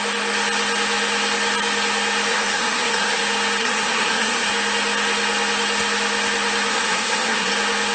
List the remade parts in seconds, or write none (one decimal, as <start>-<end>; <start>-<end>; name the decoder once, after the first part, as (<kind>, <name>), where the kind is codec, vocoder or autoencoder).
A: 2.3-3.2 (codec, SNAC); 3.6-4.5; 6.7-7.5